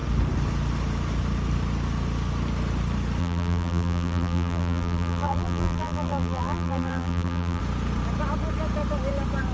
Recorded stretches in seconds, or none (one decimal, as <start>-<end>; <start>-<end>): 0.0-3.2; 7.6-9.5